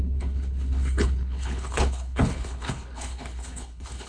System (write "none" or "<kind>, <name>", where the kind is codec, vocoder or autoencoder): codec, HILCodec